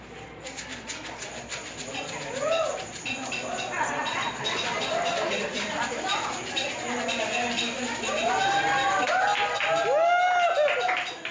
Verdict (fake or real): real